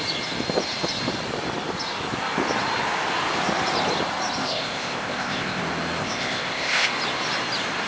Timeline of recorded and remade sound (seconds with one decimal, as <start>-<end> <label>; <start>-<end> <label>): 0.0-4.4 recorded; 4.4-5.6 remade; 5.6-6.0 recorded; 6.0-6.9 remade; 6.9-7.9 recorded